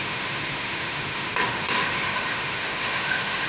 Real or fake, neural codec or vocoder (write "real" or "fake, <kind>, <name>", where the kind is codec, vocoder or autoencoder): fake, autoencoder, DAC-VAE